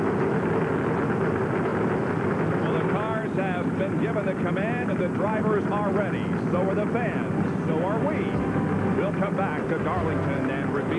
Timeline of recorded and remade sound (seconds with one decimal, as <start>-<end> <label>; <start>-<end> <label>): 0.0-11.0 recorded

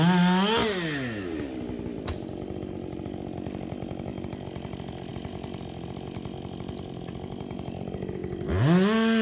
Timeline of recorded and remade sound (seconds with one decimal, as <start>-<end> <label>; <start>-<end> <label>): 0.0-9.2 recorded